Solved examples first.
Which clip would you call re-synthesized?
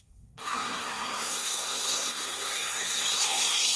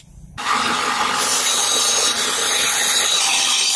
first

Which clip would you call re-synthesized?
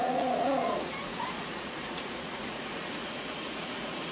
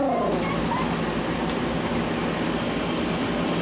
first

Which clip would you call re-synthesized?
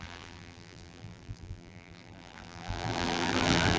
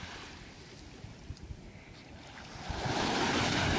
first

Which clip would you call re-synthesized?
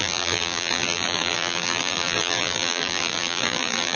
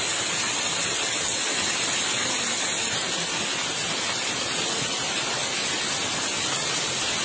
first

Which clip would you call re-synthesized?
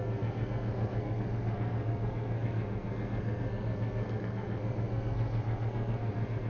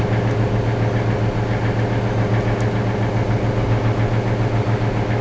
first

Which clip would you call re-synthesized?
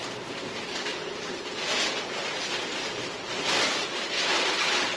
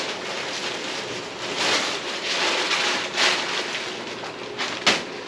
first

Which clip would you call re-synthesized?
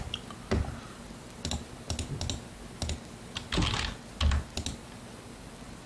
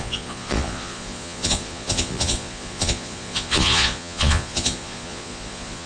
second